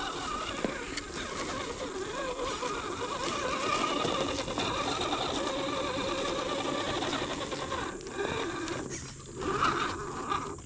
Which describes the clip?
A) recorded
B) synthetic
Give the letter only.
A